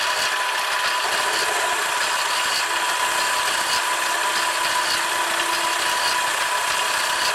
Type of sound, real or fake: real